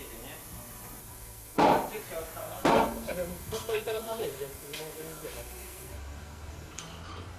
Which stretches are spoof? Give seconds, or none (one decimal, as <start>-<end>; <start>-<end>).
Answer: 1.0-1.6; 2.4-6.8